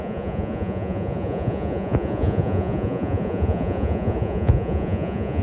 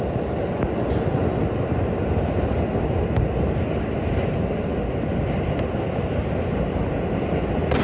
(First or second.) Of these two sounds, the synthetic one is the first